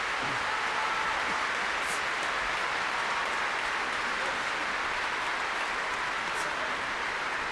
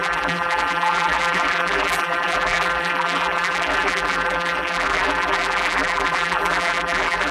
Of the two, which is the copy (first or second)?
second